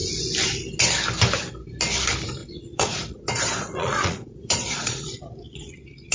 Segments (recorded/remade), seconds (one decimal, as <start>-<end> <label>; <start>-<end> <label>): 0.0-2.4 recorded; 2.4-6.1 remade